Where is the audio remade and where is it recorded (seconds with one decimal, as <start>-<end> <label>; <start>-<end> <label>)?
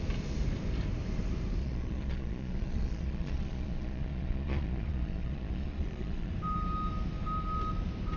0.0-1.6 recorded; 1.6-6.3 remade; 6.3-8.2 recorded